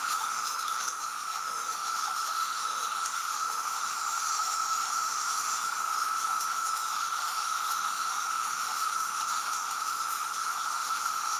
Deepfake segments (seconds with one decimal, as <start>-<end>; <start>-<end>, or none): 0.0-11.4